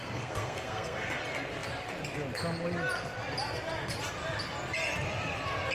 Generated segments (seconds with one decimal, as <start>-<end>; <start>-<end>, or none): 0.0-1.2